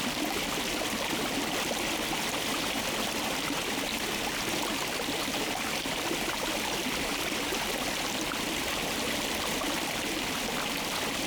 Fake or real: real